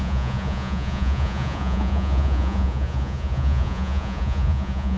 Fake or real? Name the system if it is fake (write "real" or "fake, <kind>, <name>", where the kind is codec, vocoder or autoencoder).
fake, vocoder, Vocos